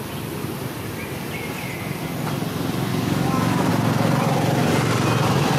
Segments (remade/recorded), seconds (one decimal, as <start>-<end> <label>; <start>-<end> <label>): 0.0-2.9 recorded; 2.9-3.7 remade; 3.7-5.6 recorded